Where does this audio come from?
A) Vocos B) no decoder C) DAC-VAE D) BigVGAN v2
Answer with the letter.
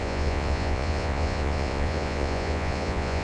A